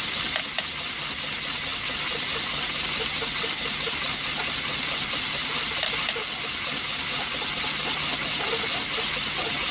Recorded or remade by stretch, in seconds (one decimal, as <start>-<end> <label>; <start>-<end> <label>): 0.0-9.7 recorded